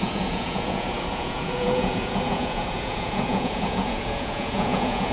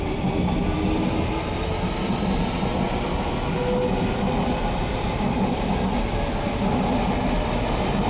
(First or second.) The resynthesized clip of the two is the first